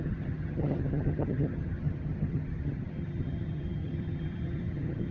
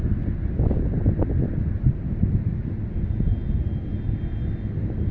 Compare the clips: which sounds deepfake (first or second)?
first